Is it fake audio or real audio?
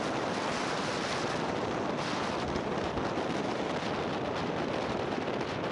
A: real